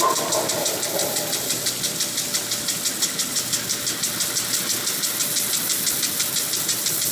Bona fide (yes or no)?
yes